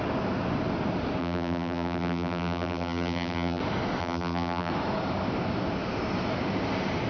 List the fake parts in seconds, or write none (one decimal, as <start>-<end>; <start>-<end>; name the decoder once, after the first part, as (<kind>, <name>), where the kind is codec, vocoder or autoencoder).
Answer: 1.2-3.6 (vocoder, BigVGAN v2); 4.0-4.7